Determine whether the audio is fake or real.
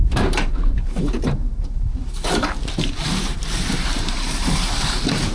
fake